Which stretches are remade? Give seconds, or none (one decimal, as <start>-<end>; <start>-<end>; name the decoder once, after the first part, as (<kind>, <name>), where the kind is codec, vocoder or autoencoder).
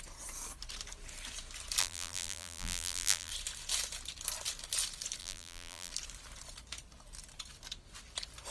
1.8-3.3 (vocoder, BigVGAN v2); 5.2-5.9